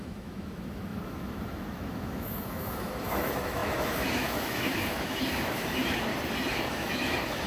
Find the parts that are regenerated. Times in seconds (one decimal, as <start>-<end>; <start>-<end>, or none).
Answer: 0.0-6.1; 6.6-7.5